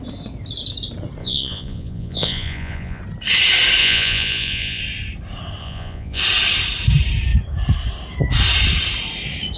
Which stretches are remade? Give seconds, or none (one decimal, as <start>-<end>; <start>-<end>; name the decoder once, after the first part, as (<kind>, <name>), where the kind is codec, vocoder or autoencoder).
1.2-3.0 (vocoder, Vocos); 3.8-4.8; 5.6-6.2